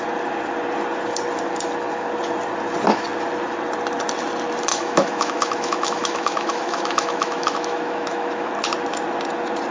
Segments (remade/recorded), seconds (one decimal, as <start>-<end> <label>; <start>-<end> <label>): 0.0-4.7 recorded; 4.7-8.5 remade; 8.5-9.7 recorded